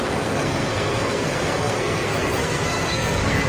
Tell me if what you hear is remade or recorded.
remade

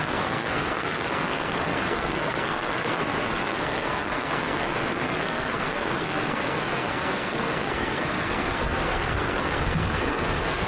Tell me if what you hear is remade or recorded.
remade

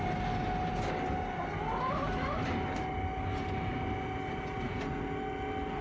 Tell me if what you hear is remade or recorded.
recorded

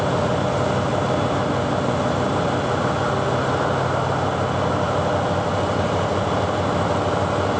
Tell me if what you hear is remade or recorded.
recorded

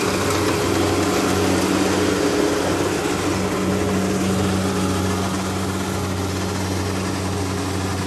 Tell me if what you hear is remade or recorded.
recorded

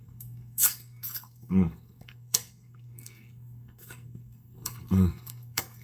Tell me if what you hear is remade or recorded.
remade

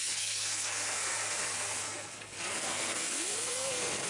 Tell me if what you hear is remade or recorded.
remade